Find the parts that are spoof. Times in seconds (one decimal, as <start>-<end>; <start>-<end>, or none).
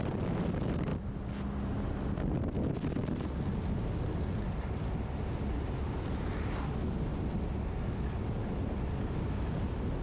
none